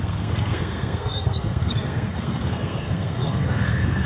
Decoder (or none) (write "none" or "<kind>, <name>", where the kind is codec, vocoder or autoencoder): codec, SNAC